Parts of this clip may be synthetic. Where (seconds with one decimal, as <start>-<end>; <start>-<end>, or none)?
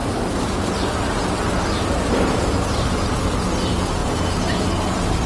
none